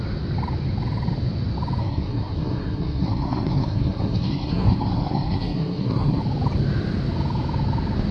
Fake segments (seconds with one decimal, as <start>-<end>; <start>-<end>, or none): 1.8-6.2